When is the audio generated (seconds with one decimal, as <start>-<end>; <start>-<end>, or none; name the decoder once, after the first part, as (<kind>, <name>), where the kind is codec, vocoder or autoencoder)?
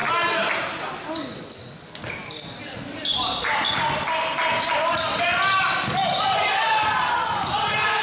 none